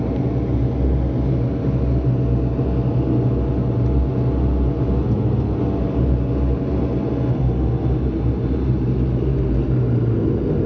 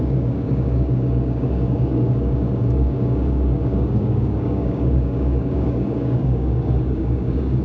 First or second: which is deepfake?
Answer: second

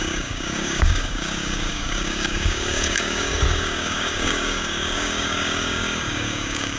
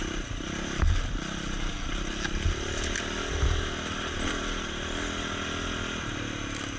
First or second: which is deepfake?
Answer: first